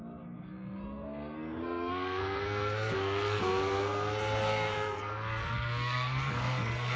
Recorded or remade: remade